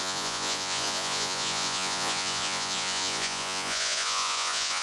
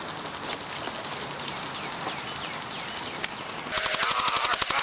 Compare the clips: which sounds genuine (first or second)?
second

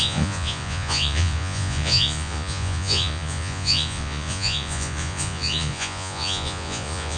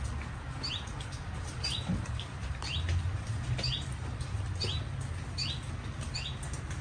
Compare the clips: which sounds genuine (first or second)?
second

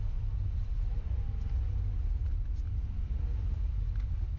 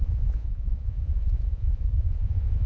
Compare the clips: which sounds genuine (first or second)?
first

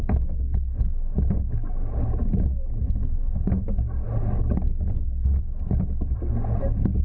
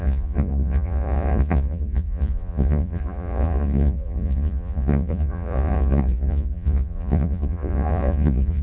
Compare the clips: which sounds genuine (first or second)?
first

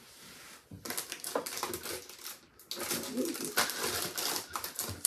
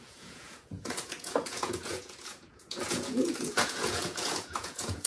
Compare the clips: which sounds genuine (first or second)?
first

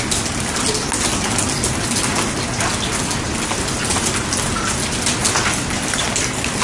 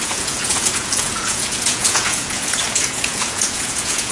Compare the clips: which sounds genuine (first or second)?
first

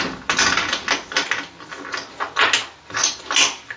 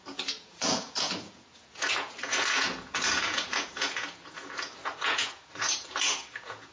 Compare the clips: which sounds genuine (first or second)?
first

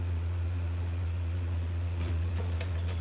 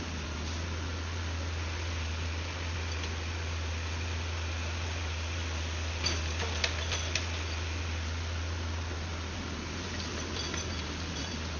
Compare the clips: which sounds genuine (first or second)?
second